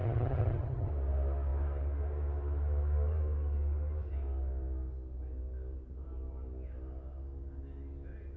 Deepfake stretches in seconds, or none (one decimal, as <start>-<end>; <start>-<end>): 0.0-0.9